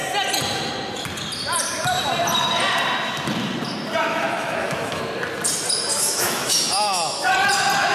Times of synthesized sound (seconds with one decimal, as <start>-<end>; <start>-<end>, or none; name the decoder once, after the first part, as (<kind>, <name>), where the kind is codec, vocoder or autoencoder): 4.1-5.0 (autoencoder, DAC-VAE); 5.9-7.3